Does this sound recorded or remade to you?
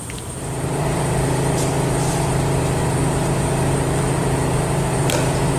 remade